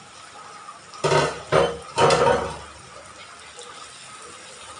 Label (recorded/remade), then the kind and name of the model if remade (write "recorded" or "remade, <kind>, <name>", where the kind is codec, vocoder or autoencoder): recorded